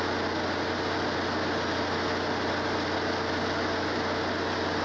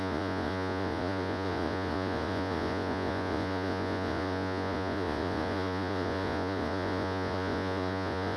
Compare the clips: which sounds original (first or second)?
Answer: first